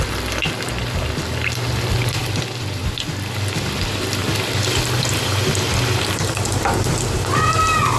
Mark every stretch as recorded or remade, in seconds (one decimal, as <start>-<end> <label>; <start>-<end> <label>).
0.0-8.0 recorded